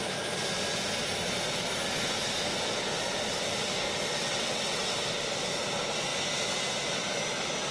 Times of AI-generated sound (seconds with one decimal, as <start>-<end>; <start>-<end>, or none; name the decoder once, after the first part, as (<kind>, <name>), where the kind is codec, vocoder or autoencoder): 4.2-4.8 (vocoder, WaveNeXt)